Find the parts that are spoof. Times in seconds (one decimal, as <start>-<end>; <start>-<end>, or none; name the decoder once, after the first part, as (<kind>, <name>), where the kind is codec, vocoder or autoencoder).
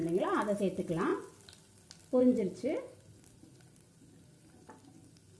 none